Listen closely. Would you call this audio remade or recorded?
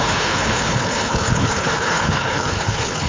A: remade